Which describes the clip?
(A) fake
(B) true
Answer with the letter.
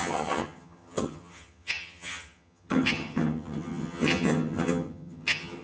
A